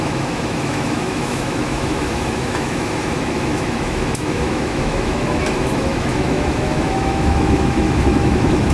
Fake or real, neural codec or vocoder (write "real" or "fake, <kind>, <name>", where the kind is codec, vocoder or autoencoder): fake, autoencoder, DAC-VAE